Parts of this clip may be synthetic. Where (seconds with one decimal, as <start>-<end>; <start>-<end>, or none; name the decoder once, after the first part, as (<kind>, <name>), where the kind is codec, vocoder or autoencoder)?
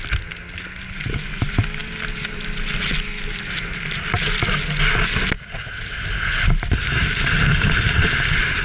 none